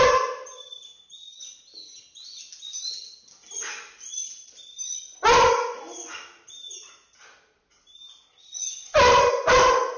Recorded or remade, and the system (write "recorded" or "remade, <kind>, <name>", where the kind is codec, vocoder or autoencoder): recorded